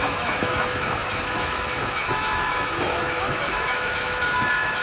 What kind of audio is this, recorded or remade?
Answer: remade